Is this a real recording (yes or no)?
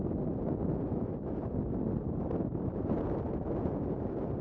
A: yes